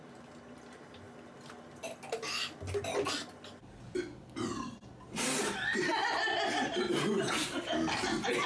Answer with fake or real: real